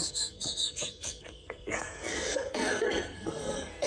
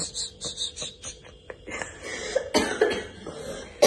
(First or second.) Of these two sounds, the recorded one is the second